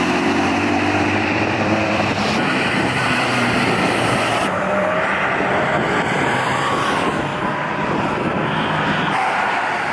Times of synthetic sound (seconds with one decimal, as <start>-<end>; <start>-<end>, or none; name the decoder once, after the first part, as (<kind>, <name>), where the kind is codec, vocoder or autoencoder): 0.0-7.3 (vocoder, BigVGAN v2); 8.7-9.9